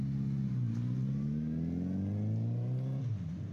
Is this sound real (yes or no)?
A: yes